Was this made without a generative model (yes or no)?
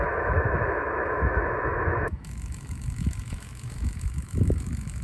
no